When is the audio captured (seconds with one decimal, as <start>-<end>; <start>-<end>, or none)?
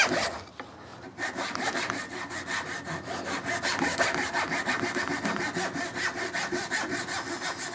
0.0-0.9; 2.3-7.7